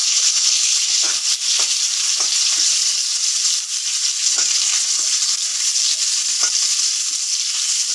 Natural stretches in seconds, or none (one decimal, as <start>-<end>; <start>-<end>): 1.3-7.9